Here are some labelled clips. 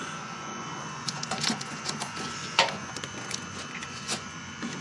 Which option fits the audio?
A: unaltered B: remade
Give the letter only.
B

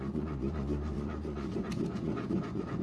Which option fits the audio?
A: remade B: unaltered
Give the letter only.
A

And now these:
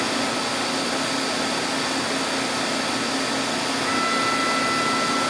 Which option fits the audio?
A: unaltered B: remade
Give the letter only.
A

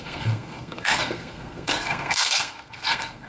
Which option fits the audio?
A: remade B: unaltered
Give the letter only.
A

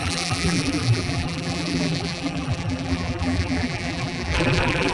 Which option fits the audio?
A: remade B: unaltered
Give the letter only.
A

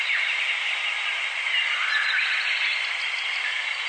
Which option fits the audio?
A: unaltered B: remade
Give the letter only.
A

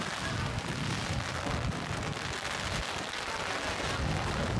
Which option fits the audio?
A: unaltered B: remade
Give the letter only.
A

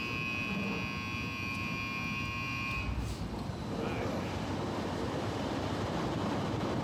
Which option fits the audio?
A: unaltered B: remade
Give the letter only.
A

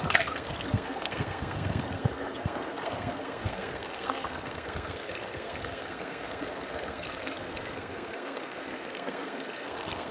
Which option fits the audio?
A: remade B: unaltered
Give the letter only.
A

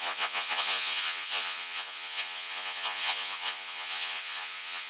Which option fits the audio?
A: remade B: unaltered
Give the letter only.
A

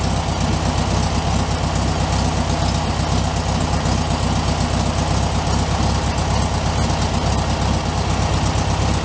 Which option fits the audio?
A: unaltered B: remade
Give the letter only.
A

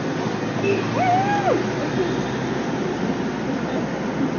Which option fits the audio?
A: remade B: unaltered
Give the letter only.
B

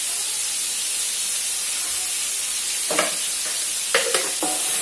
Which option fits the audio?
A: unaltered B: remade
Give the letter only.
A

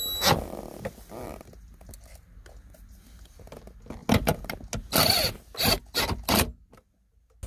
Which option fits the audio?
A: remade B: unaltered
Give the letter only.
B